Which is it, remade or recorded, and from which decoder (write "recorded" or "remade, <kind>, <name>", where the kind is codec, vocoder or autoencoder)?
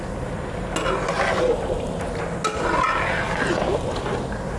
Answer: recorded